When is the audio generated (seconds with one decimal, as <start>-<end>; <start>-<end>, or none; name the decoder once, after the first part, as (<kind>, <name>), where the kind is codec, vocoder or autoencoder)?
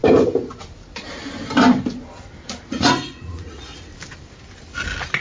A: 2.6-3.9 (vocoder, Vocos)